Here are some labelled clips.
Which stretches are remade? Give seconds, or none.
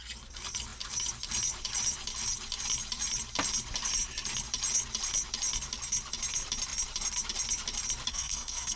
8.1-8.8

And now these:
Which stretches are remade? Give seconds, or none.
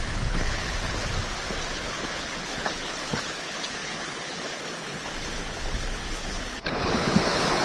0.0-1.0; 1.7-7.6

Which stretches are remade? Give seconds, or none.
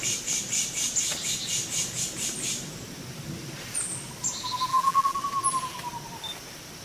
4.7-5.2